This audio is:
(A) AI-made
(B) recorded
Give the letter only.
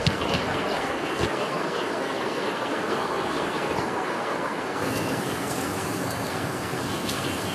A